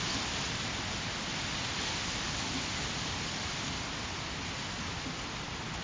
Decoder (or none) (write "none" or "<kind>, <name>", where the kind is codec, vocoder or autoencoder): none